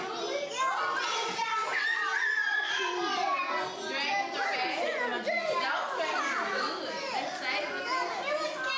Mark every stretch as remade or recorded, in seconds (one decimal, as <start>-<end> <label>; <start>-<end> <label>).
0.0-8.8 recorded